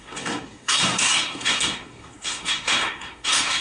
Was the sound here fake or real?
fake